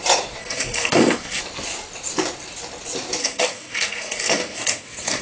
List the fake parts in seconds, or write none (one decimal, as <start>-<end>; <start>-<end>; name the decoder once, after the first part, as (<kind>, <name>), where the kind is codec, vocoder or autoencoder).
0.4-1.4 (codec, SNAC); 3.2-5.2